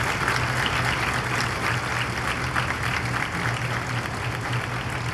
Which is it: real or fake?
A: real